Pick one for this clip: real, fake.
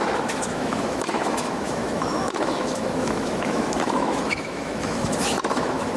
fake